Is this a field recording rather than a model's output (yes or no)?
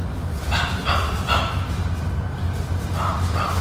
yes